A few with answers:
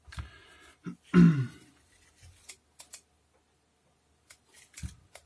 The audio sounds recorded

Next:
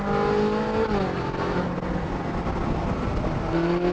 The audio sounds recorded